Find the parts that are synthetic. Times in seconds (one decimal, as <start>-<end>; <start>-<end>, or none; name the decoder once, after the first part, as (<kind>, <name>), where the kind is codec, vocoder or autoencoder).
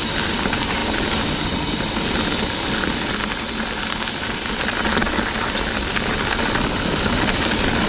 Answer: none